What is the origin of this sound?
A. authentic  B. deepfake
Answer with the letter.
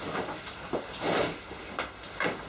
A